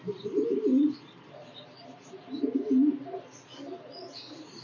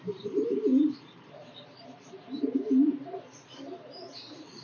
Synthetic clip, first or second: second